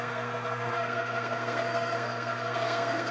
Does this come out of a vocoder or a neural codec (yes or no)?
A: yes